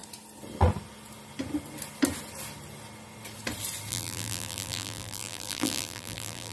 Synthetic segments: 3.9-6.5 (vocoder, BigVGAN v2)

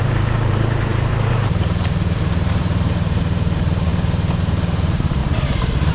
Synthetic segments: 0.0-5.9 (vocoder, BigVGAN v2)

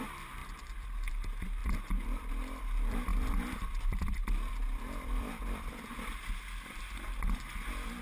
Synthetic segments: 0.4-1.1 (vocoder, BigVGAN v2); 1.6-2.3; 3.1-6.0

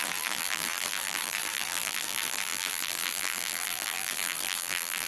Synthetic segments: 0.0-5.1 (vocoder, BigVGAN v2)

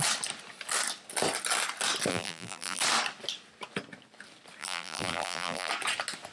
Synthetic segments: 2.1-2.8 (vocoder, BigVGAN v2); 4.6-5.7